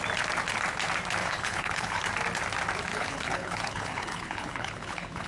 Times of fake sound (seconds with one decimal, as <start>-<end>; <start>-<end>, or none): 1.2-2.0; 2.9-5.3